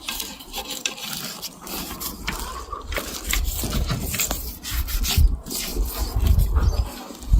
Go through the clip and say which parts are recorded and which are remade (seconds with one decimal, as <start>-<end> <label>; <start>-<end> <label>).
0.0-7.4 recorded